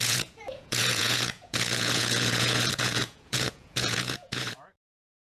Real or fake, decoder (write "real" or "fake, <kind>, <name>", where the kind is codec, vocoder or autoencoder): fake, vocoder, Vocos